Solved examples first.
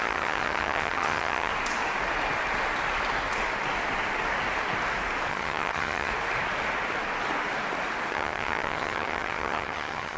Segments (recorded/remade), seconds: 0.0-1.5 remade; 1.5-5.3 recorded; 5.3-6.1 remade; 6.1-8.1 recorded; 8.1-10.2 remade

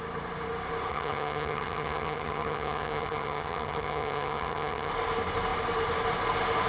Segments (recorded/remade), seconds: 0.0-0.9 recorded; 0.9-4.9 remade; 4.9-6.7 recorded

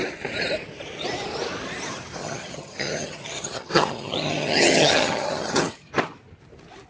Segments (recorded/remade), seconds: 0.0-2.2 recorded; 2.2-5.9 remade; 5.9-6.9 recorded

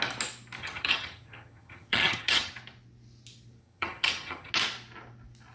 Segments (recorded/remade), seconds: 0.0-0.6 recorded; 0.6-2.5 remade; 2.5-3.6 recorded; 3.6-4.5 remade; 4.5-5.5 recorded

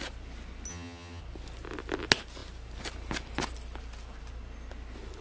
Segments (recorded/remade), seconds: 0.0-0.7 recorded; 0.7-1.2 remade; 1.2-5.2 recorded